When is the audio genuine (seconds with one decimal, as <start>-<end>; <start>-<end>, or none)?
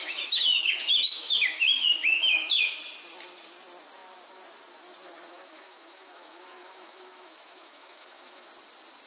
2.8-5.3; 8.5-9.1